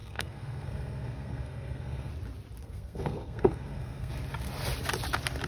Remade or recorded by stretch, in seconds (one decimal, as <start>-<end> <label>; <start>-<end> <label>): 0.0-2.1 remade; 2.1-2.6 recorded; 2.6-4.1 remade; 4.1-5.5 recorded